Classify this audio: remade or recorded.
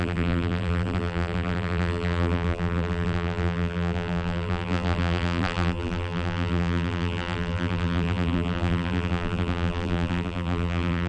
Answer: remade